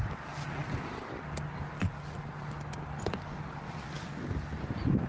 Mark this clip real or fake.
real